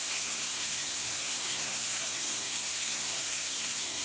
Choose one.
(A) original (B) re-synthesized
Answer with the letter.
B